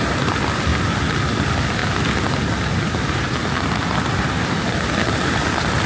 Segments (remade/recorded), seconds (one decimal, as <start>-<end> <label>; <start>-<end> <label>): 0.0-0.7 remade; 0.7-1.4 recorded; 1.4-1.8 remade; 1.8-2.8 recorded; 2.8-3.4 remade; 3.4-4.2 recorded; 4.2-5.9 remade